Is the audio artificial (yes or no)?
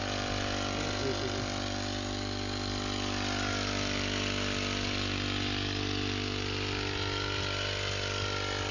no